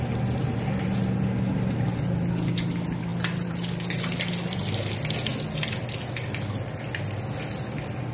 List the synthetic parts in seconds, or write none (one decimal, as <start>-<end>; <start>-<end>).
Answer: 0.4-1.0; 3.1-3.7